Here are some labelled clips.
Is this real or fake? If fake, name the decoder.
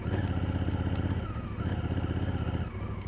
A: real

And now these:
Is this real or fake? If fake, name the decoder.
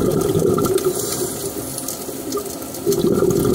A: real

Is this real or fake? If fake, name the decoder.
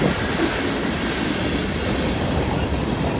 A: real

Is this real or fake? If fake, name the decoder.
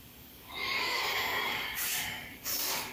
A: fake, codec, DAC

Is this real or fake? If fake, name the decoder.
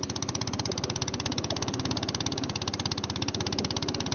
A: real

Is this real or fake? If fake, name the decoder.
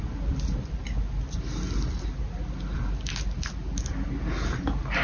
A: real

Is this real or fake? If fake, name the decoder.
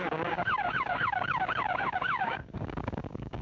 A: fake, codec, DAC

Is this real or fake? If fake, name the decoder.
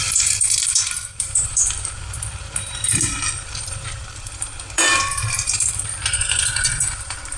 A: fake, vocoder, BigVGAN v2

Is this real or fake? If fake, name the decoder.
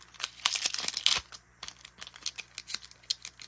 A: real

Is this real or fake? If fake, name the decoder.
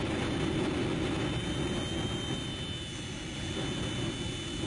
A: real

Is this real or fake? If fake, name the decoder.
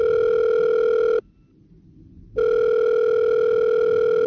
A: real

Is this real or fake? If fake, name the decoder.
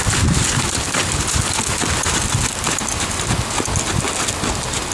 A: real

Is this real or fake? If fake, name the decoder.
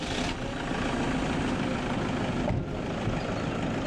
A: real